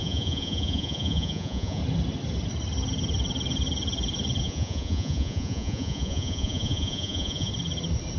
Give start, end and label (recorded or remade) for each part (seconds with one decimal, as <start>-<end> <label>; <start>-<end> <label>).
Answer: 0.0-1.8 remade; 1.8-4.4 recorded; 4.4-7.5 remade; 7.5-8.2 recorded